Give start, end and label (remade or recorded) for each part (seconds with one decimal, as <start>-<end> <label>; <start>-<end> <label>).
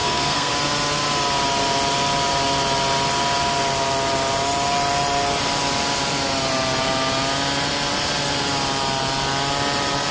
0.0-0.5 remade; 0.5-10.1 recorded